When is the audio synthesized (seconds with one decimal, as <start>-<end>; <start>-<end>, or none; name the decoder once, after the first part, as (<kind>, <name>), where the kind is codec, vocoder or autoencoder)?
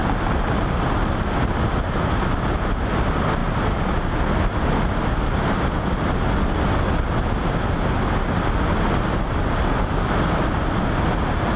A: none